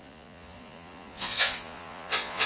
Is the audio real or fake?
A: fake